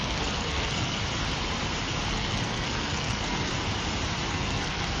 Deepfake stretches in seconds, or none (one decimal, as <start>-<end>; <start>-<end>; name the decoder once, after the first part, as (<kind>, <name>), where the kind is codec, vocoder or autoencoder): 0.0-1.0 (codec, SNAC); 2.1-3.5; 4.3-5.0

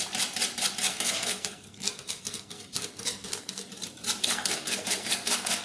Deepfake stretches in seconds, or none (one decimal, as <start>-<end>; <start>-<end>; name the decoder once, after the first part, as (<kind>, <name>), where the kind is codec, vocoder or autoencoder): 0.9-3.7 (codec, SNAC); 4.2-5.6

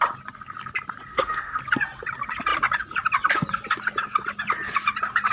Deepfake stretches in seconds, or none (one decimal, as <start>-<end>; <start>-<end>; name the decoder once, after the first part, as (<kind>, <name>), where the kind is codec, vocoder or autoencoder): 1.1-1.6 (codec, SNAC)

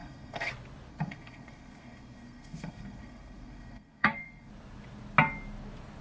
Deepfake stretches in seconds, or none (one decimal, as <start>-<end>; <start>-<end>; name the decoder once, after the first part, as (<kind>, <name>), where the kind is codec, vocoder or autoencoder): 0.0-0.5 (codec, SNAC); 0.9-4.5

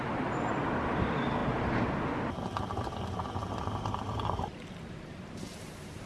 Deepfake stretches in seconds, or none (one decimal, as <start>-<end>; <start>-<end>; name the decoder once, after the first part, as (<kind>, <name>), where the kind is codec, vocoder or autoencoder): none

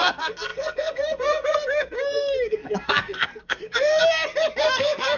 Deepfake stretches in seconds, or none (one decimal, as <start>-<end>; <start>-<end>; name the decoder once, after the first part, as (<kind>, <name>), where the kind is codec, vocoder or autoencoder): 0.0-4.0 (codec, SNAC); 4.6-5.2